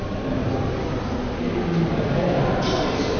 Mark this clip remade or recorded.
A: recorded